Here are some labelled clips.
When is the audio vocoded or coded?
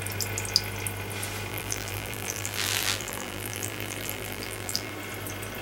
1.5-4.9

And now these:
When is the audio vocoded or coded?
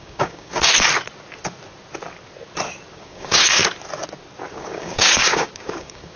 0.0-0.7; 2.9-3.6; 4.5-6.2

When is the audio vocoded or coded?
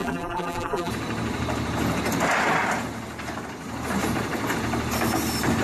0.0-0.9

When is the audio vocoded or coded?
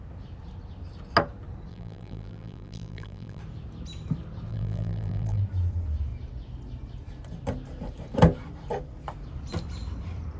1.7-3.4; 4.5-5.4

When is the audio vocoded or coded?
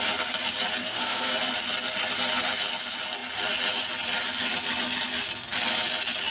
0.8-1.3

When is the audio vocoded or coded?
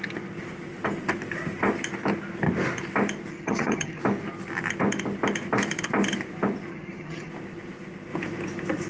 3.3-4.0; 6.7-7.3